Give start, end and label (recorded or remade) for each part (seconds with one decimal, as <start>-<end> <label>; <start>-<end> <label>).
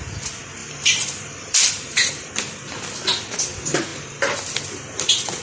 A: 0.0-0.6 recorded; 0.6-2.3 remade; 2.3-5.4 recorded